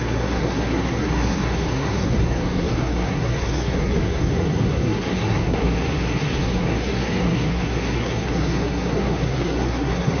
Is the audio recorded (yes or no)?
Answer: no